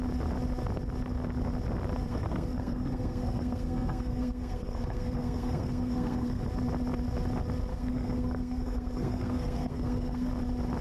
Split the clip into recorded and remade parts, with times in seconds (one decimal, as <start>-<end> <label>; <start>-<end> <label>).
0.0-2.1 recorded; 2.1-6.4 remade; 6.4-7.7 recorded; 7.7-10.3 remade; 10.3-10.8 recorded